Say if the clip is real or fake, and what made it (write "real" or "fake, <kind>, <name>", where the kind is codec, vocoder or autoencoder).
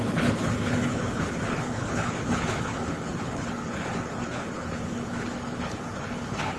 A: fake, codec, HILCodec